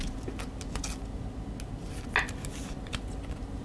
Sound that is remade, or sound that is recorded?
recorded